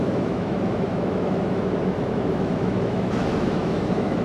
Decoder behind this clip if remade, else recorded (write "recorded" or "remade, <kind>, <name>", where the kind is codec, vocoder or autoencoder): remade, autoencoder, DAC-VAE